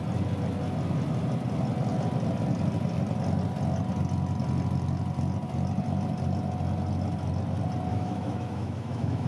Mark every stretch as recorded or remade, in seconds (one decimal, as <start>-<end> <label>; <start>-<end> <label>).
0.0-7.9 recorded; 7.9-9.3 remade